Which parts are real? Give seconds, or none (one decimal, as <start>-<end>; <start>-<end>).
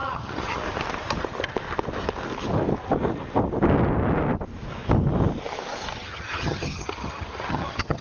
0.6-6.0